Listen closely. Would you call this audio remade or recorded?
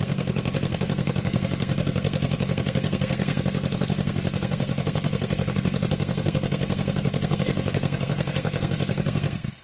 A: remade